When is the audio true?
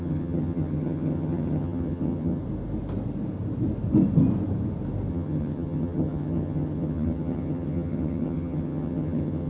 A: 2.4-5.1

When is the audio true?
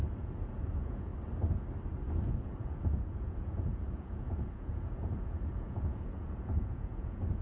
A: 1.1-2.3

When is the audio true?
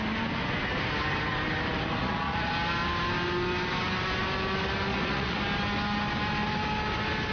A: 0.0-2.0; 2.5-4.9; 5.4-7.3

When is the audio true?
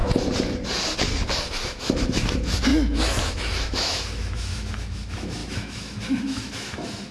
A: 0.0-1.5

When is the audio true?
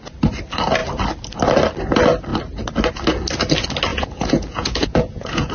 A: 0.0-3.9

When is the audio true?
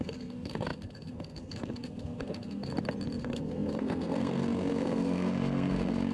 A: 2.7-3.2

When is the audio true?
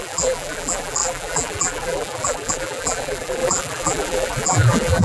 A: none